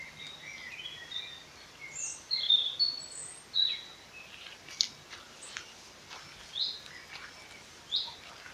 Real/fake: real